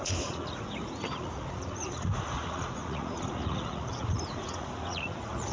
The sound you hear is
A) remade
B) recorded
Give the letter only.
A